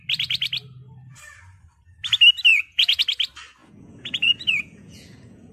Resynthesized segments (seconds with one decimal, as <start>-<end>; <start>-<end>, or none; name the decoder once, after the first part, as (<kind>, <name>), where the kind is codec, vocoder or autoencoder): 2.5-3.0 (vocoder, Vocos); 3.6-5.5